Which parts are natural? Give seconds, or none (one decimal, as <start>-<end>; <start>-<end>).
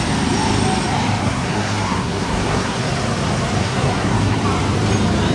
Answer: 0.0-1.2; 2.9-3.6; 4.4-5.3